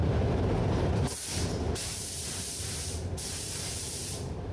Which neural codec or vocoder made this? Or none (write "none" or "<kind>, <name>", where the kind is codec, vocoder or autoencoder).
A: vocoder, BigVGAN v2